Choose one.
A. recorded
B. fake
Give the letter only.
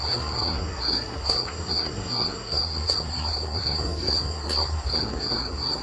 B